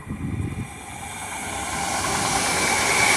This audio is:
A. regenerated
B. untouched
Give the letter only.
B